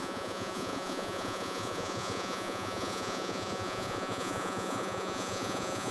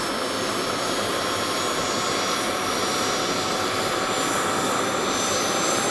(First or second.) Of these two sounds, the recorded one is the second